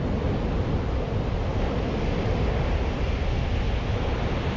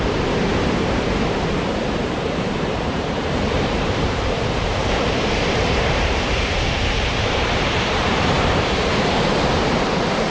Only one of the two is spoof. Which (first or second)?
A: second